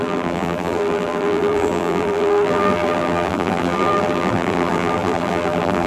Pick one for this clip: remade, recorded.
remade